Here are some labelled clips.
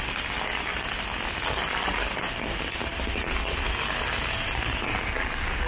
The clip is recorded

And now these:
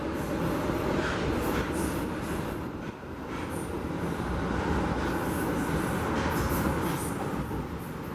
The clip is recorded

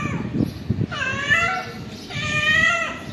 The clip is recorded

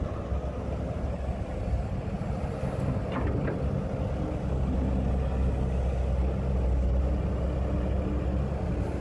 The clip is recorded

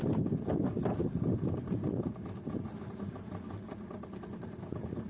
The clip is recorded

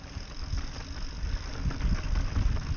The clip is recorded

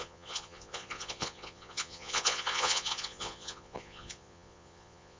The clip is remade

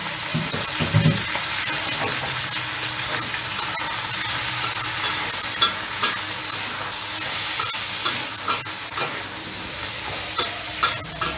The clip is recorded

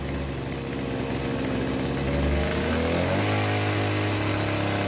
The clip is recorded